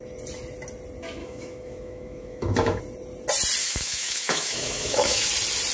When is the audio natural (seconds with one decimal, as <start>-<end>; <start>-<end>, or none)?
0.0-1.2; 2.8-3.6; 5.3-5.7